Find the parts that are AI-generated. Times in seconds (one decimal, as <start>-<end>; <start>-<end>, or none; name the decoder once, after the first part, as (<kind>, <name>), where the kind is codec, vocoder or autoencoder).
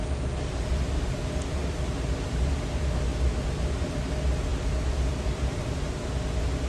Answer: none